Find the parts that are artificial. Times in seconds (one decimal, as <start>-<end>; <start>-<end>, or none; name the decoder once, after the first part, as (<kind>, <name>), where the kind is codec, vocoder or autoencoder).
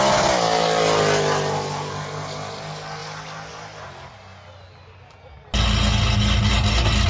none